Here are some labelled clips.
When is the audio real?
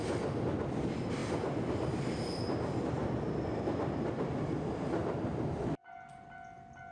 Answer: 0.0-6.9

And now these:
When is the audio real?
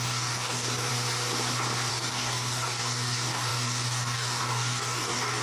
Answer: 0.9-1.9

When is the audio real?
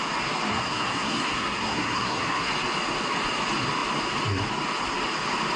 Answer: 0.0-0.5; 2.5-5.6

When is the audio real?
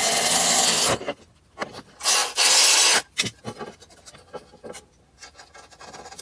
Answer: 0.0-6.2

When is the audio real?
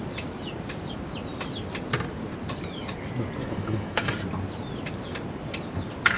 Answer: 0.0-3.4; 4.1-6.2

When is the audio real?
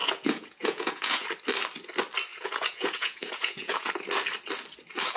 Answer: 1.3-2.3; 3.9-5.2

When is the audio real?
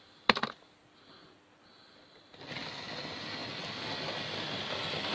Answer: 0.0-0.8; 2.6-5.1